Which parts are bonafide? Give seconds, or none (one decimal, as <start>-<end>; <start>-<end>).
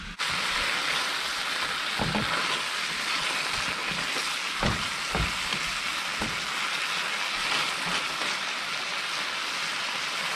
0.0-10.3